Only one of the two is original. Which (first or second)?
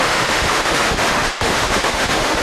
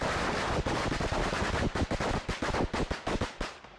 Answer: second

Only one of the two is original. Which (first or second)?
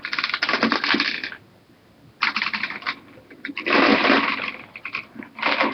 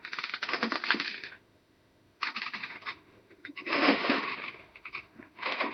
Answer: first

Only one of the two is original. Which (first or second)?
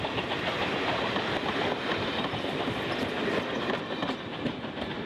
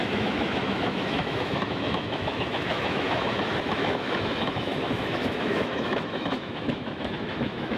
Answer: first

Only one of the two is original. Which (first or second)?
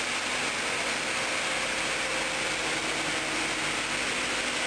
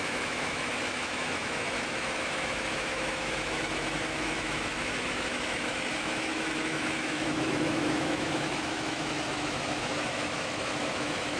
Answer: first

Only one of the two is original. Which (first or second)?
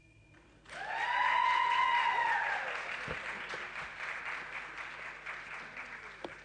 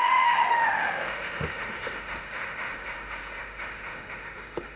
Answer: first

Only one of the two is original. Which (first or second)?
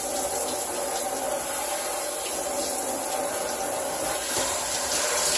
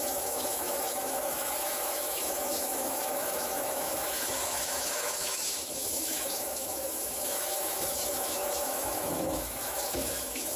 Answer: first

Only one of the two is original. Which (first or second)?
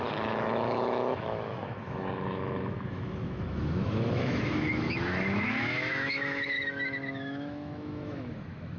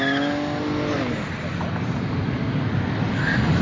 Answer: second